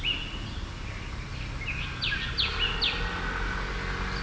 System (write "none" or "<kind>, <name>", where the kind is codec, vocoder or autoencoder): none